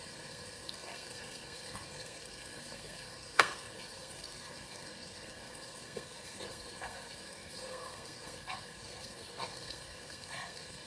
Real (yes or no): no